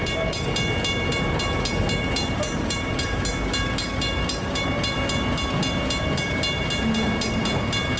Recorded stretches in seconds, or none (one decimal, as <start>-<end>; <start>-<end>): 0.0-8.0